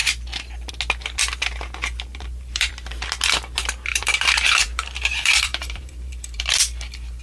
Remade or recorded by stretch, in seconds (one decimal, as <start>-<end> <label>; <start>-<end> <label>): 0.0-2.1 recorded; 2.1-2.7 remade; 2.7-3.9 recorded; 3.9-6.4 remade; 6.4-7.2 recorded